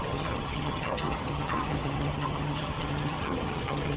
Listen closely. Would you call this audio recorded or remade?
remade